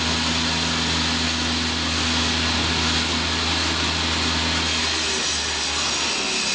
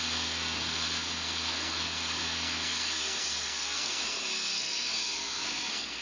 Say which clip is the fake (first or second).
second